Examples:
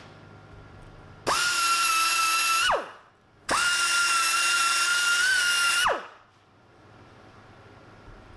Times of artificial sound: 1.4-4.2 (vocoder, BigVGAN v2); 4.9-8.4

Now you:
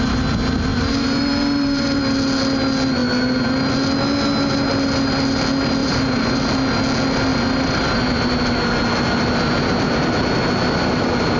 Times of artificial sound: 0.7-2.0 (vocoder, BigVGAN v2); 5.8-6.4